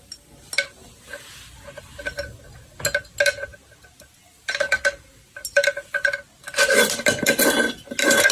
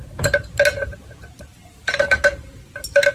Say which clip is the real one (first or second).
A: first